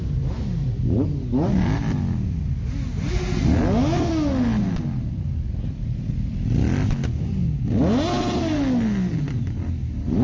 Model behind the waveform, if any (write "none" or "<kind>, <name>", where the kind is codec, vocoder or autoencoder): none